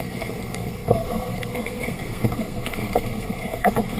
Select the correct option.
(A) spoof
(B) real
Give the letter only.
A